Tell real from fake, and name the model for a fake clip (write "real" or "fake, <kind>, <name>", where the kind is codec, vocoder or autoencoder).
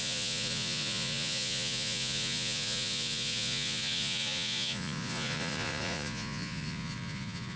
fake, vocoder, Vocos